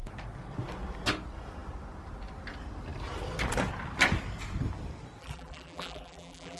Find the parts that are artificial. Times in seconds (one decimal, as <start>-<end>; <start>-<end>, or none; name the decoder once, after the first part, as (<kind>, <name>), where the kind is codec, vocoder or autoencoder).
5.2-6.6 (vocoder, BigVGAN v2)